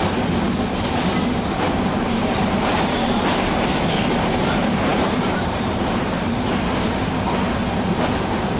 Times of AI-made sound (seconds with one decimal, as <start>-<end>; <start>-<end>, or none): 2.2-3.4; 4.9-6.2